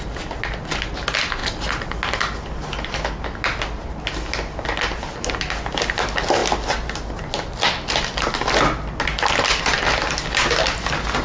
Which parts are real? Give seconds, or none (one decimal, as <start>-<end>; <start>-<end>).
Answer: 0.0-11.2